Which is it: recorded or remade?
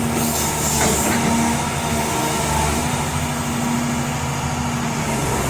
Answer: recorded